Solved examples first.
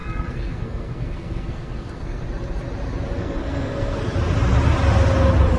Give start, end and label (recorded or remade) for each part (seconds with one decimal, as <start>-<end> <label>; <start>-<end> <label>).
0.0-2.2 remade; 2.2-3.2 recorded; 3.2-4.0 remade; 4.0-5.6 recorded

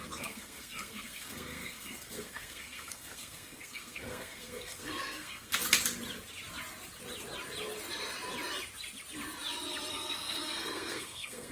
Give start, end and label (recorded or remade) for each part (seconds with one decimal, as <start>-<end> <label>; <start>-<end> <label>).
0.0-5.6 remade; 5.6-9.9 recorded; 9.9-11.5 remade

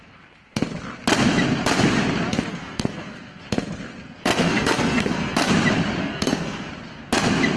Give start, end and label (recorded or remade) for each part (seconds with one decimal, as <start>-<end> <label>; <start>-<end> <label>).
0.0-2.5 recorded; 2.5-3.4 remade; 3.4-4.0 recorded; 4.0-5.5 remade; 5.5-6.0 recorded; 6.0-6.7 remade; 6.7-7.6 recorded

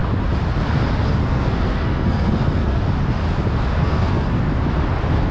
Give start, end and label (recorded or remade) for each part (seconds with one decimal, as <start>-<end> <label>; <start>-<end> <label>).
0.0-1.2 recorded; 1.2-2.8 remade; 2.8-3.8 recorded; 3.8-4.4 remade; 4.4-5.3 recorded